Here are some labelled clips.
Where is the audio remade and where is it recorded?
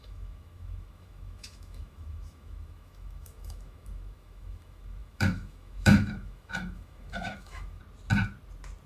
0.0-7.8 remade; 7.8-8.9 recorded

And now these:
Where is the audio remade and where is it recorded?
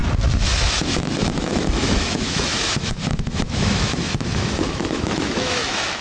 0.0-0.5 recorded; 0.5-6.0 remade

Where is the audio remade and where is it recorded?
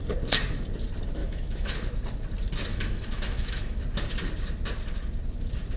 0.0-1.2 recorded; 1.2-1.7 remade; 1.7-2.7 recorded; 2.7-3.8 remade; 3.8-5.8 recorded